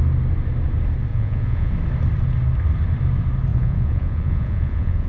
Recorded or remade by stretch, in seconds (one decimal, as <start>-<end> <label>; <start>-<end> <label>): 0.0-1.1 recorded; 1.1-1.7 remade; 1.7-3.5 recorded; 3.5-5.1 remade